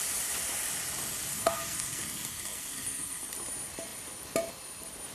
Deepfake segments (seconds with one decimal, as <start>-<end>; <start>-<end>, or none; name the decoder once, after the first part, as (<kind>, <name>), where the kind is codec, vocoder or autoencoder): 1.3-3.3 (codec, SNAC)